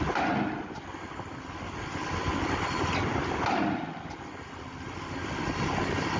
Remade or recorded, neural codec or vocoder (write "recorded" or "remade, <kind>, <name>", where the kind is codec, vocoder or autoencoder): recorded